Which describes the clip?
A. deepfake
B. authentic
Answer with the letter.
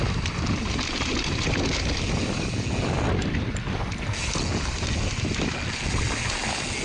B